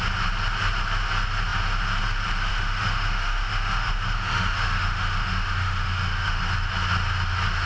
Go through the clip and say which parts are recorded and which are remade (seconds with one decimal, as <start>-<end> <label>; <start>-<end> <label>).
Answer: 0.0-2.5 recorded; 2.5-6.4 remade; 6.4-7.7 recorded